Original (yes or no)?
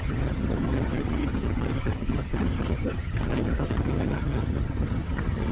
no